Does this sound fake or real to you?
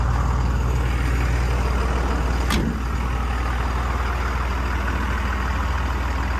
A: real